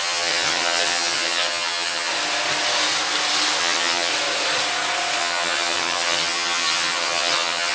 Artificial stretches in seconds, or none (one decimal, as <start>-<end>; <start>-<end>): 0.0-2.1; 3.6-4.1; 5.2-7.7